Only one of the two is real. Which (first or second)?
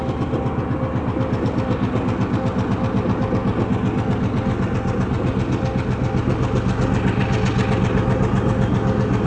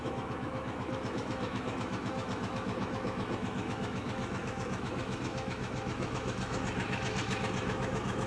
first